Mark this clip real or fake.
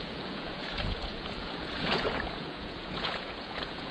fake